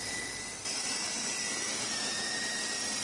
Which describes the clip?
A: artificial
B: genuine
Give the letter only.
A